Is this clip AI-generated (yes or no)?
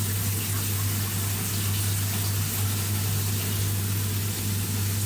no